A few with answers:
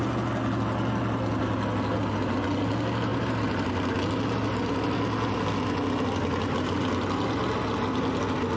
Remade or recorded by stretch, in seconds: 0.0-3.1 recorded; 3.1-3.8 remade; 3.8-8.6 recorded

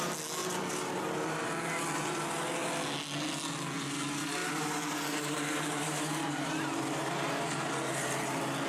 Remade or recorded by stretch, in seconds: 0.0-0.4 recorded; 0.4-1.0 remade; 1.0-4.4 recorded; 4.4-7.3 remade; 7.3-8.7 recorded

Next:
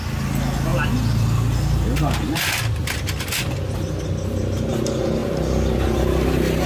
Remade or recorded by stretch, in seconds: 0.0-6.7 recorded

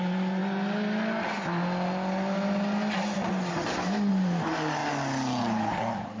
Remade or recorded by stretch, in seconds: 0.0-0.4 remade; 0.4-4.1 recorded; 4.1-4.8 remade; 4.8-5.4 recorded; 5.4-6.2 remade